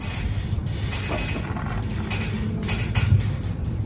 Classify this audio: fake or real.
real